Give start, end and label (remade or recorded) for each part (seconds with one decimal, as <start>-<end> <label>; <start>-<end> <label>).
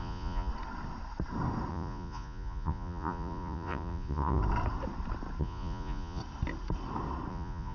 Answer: 0.0-0.5 remade; 0.5-1.7 recorded; 1.7-4.4 remade; 4.4-5.4 recorded; 5.4-6.2 remade; 6.2-7.3 recorded; 7.3-7.7 remade